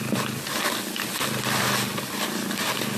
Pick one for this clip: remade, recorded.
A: recorded